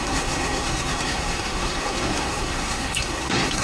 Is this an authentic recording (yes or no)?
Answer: no